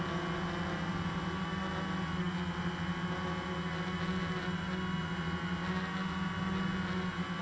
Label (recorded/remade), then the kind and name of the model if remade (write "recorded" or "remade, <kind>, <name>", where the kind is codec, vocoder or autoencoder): recorded